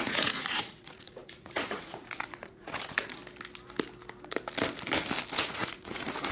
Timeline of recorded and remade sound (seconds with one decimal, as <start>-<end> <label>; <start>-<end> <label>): 0.0-3.2 remade; 3.2-5.4 recorded; 5.4-6.3 remade